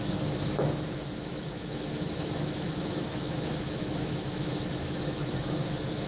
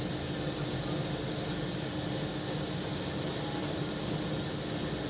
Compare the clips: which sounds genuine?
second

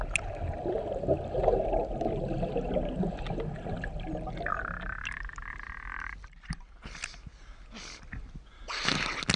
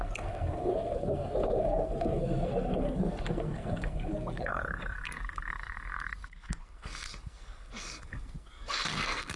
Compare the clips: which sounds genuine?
first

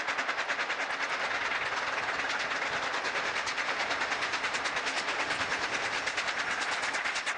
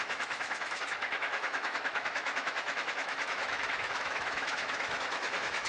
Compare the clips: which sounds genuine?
first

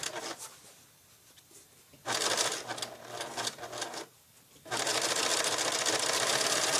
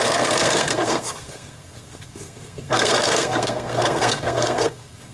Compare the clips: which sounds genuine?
first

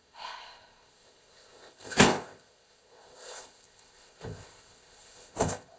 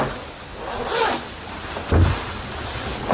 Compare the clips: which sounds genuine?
second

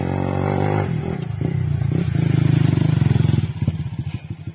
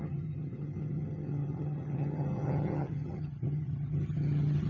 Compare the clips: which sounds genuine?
first